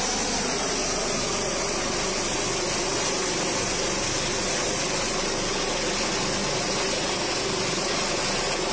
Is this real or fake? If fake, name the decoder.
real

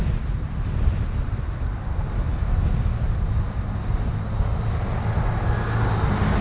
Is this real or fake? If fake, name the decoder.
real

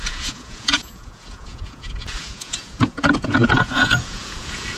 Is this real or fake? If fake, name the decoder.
fake, vocoder, Vocos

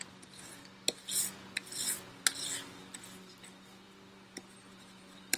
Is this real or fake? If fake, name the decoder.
real